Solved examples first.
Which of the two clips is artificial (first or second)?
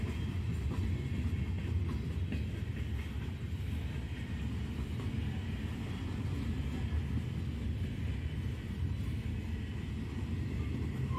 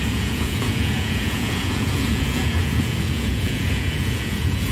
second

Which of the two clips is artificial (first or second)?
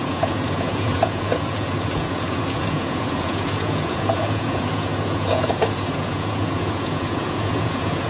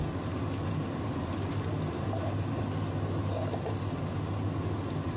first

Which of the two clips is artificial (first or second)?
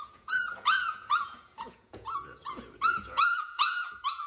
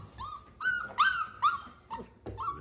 first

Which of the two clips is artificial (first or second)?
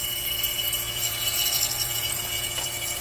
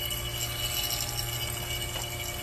first